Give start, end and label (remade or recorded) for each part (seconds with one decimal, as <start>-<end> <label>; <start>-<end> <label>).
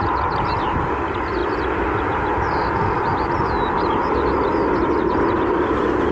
0.0-6.1 recorded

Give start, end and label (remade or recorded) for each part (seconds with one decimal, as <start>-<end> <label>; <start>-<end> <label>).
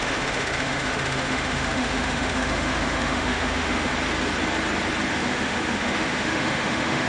0.0-3.9 remade; 3.9-5.1 recorded; 5.1-7.1 remade